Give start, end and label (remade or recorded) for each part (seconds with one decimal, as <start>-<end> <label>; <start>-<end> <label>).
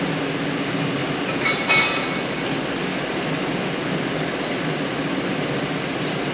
0.0-1.0 recorded; 1.0-1.7 remade; 1.7-6.3 recorded